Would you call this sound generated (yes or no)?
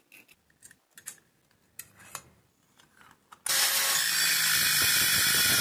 no